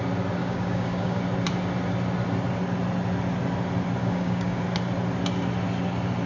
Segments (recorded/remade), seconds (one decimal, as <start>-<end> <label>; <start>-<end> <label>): 0.0-0.4 recorded; 0.4-1.2 remade; 1.2-4.0 recorded; 4.0-4.6 remade; 4.6-6.3 recorded